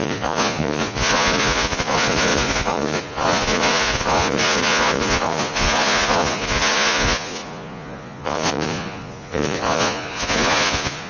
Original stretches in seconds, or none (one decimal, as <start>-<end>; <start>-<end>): none